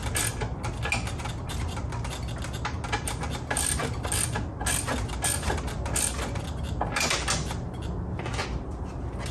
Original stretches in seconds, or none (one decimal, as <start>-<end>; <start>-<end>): 0.0-9.3